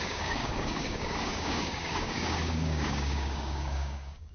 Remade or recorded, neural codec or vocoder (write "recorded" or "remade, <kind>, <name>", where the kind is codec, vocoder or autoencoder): remade, codec, DAC